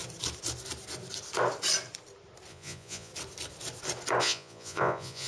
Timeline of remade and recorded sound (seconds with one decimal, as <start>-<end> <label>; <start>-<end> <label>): 0.0-2.5 recorded; 2.5-3.1 remade; 3.1-4.2 recorded; 4.2-5.3 remade